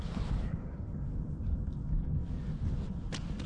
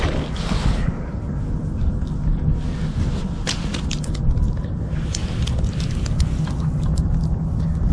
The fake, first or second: first